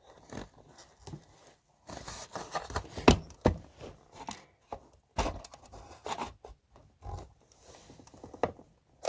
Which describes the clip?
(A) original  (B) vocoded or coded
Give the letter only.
A